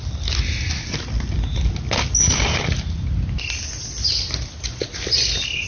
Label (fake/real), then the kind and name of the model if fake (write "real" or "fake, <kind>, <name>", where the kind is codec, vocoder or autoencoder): real